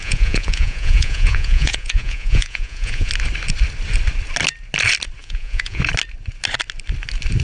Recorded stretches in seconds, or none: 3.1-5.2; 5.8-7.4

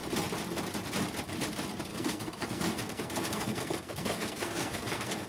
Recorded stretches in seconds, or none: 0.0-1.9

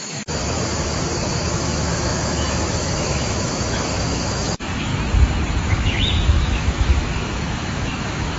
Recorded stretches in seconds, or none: 0.7-1.3; 4.9-5.6